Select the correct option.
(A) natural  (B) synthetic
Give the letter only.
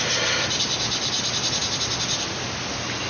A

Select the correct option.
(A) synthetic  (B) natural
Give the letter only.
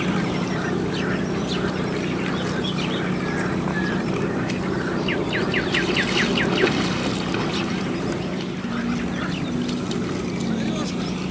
B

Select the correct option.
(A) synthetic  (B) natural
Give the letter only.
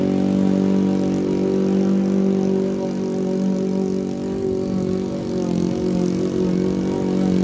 B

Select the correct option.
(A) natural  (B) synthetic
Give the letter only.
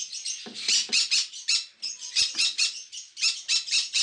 A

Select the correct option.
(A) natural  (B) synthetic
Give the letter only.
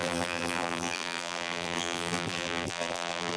B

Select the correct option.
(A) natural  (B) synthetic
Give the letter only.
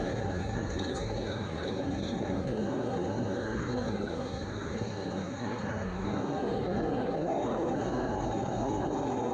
B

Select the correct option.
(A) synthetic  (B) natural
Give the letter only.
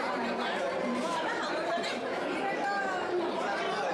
A